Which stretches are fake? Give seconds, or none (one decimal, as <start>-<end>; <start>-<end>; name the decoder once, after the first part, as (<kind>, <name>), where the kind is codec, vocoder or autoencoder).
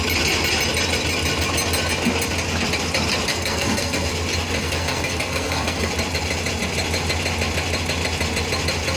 3.3-4.1 (codec, SNAC); 4.6-5.9